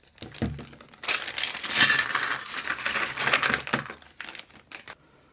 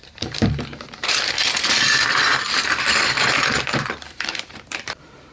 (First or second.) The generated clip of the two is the second